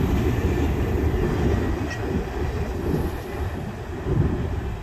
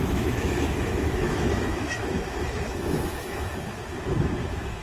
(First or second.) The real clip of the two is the first